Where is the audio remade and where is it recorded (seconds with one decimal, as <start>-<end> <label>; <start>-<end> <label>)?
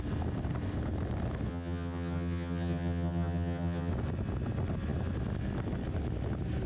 0.0-1.5 recorded; 1.5-3.9 remade; 3.9-6.7 recorded